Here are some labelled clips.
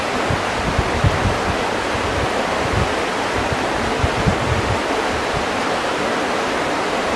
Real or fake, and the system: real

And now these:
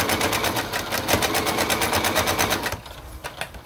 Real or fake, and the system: real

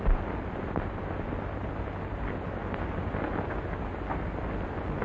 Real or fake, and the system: real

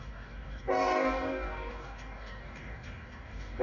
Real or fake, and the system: fake, codec, DAC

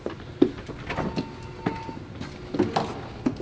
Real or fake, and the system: real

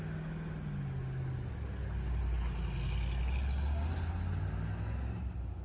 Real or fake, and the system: real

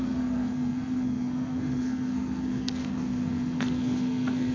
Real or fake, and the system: fake, codec, SNAC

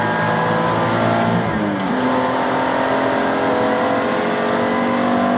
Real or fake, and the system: real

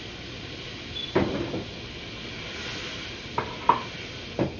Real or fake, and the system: real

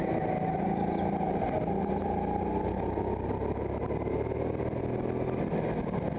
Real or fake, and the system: real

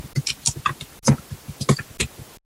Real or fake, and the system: real